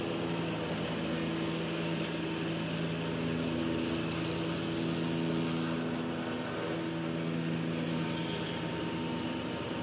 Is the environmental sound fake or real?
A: real